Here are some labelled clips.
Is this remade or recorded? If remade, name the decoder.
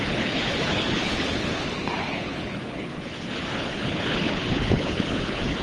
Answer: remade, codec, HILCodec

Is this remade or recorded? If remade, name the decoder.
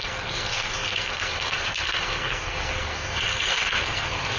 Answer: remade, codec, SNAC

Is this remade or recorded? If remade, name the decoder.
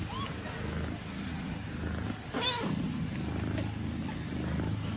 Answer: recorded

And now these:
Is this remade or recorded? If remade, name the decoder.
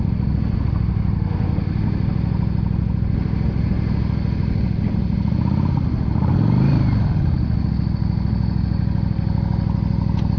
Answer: recorded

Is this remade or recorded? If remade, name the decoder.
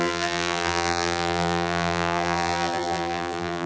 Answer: remade, vocoder, BigVGAN v2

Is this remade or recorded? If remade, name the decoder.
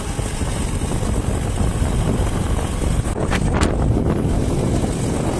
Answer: recorded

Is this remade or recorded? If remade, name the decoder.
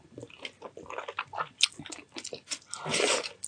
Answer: recorded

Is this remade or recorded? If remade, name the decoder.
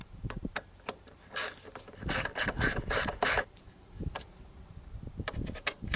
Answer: remade, vocoder, BigVGAN v2